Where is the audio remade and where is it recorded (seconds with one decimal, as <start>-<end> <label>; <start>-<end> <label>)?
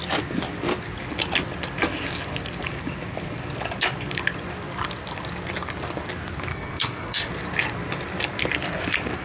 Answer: 0.0-6.5 recorded; 6.5-7.3 remade; 7.3-9.2 recorded